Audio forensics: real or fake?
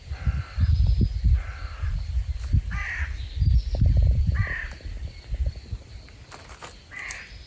real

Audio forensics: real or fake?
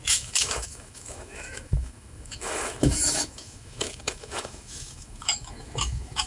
fake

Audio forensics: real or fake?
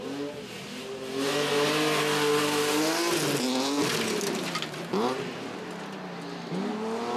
real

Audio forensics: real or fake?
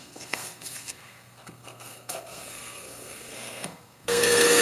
fake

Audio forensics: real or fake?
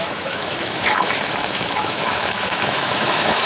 fake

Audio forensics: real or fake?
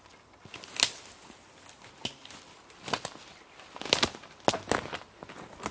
real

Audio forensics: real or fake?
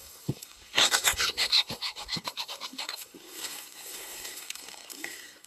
fake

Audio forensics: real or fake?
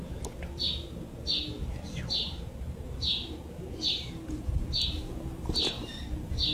real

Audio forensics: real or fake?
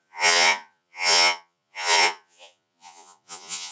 fake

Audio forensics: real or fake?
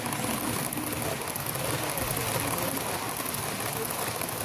real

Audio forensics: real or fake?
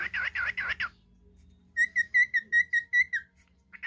real